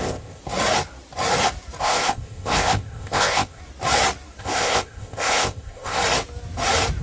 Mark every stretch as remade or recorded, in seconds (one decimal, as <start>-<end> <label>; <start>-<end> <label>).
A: 0.0-0.4 remade; 0.4-1.8 recorded; 1.8-3.6 remade; 3.6-4.4 recorded; 4.4-6.0 remade; 6.0-7.0 recorded